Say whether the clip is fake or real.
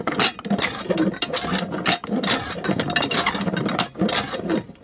real